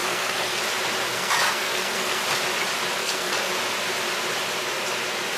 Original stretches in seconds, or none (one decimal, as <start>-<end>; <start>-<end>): 0.6-1.1; 2.2-3.0; 3.5-5.4